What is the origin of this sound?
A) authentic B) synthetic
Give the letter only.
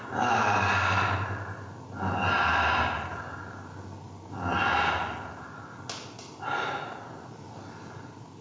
A